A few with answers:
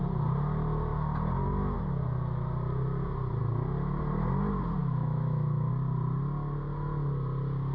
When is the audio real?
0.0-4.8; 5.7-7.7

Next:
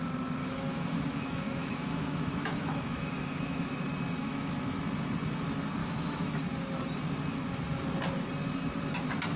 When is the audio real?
0.0-0.4; 3.8-4.2; 4.8-5.8; 6.4-9.4